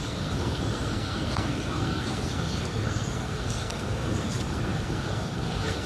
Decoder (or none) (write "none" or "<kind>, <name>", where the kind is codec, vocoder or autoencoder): codec, SNAC